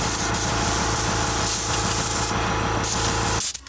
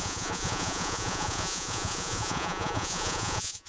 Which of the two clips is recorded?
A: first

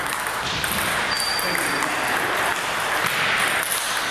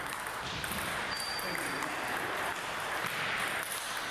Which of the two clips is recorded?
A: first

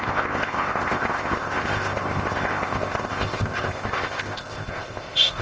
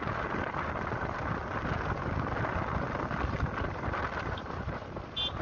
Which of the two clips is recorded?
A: second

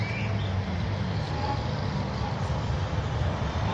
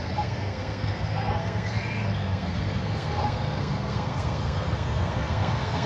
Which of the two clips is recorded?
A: first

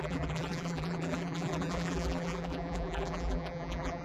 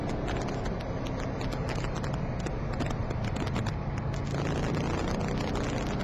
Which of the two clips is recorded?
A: second